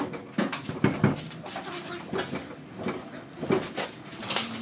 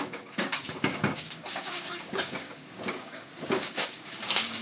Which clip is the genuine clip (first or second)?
first